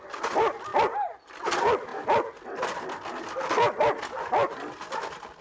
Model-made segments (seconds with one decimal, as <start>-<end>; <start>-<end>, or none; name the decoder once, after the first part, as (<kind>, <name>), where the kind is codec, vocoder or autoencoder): none